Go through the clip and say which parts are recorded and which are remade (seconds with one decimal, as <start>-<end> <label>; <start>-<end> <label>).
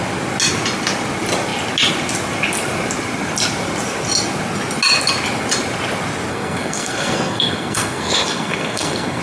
0.0-6.3 recorded; 6.3-9.2 remade